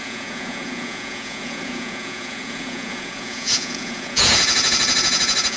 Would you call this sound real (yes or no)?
no